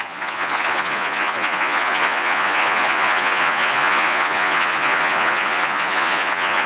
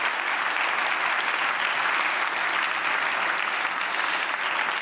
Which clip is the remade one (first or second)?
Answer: first